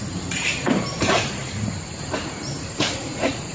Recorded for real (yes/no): no